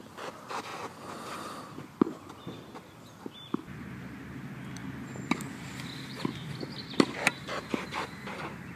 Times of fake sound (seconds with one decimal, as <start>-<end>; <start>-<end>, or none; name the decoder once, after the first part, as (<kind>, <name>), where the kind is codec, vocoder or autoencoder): none